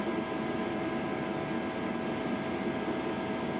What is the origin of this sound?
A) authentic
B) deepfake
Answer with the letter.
A